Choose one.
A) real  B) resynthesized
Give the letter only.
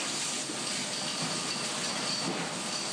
A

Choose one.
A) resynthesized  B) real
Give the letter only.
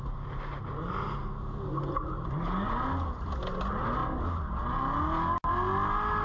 B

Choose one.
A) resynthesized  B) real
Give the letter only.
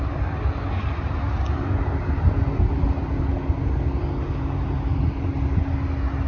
B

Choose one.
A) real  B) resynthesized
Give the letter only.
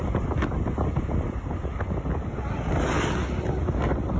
A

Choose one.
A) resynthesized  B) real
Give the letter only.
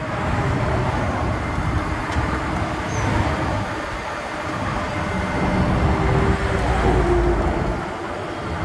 B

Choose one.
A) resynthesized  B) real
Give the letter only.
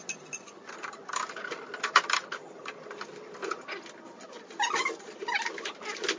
B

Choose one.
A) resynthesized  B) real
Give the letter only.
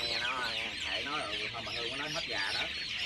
A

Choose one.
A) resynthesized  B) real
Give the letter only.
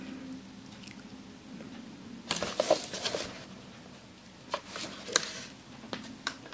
B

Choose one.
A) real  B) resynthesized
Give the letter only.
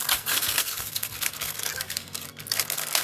B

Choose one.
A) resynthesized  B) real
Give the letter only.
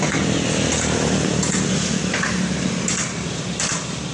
B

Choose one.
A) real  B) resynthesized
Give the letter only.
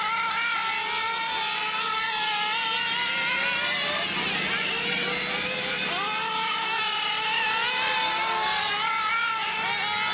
A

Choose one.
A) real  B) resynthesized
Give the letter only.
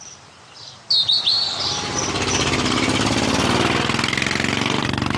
A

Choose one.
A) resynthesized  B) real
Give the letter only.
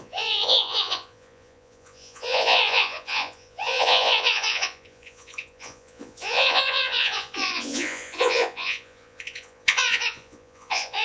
A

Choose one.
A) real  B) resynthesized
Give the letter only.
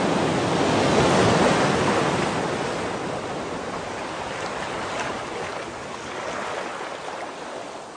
A